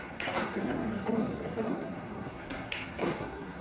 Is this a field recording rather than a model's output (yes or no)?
no